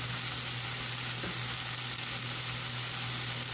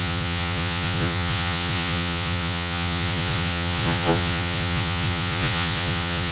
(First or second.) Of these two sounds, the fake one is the second